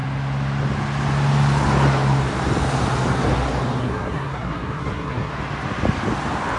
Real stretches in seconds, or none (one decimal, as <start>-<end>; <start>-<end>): 0.0-3.8; 5.3-6.6